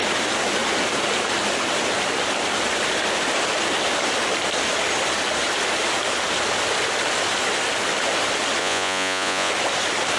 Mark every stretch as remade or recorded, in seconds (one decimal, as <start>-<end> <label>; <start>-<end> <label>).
0.0-8.6 recorded; 8.6-9.5 remade; 9.5-10.2 recorded